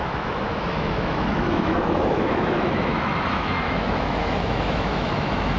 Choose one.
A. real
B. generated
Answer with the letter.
B